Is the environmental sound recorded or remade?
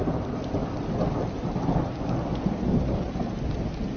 recorded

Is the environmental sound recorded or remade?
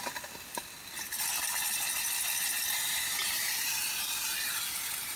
recorded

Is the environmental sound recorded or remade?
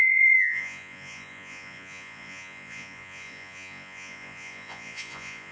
remade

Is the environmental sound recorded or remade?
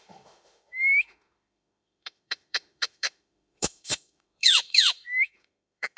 remade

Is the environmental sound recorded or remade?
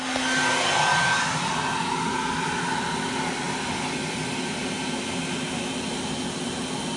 recorded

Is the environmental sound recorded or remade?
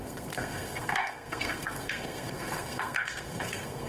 remade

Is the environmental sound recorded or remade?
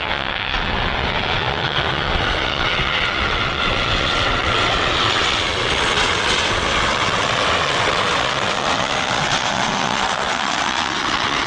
remade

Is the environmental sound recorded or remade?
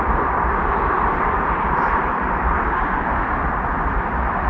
remade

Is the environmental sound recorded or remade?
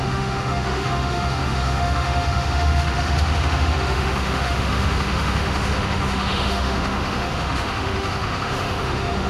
remade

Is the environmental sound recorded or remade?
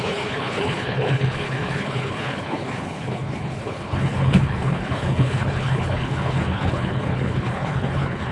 remade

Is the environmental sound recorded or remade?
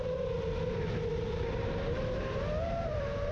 remade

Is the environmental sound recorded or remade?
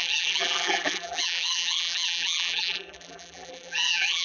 remade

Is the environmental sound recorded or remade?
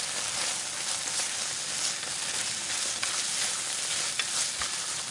recorded